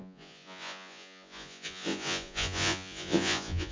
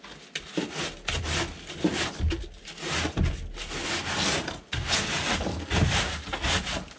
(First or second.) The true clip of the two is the second